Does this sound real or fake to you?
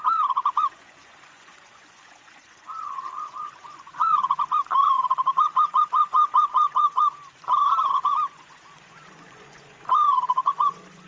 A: fake